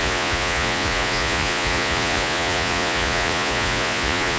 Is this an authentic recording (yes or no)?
no